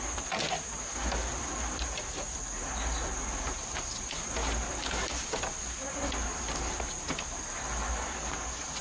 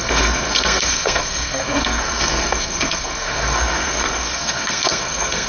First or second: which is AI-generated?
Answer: second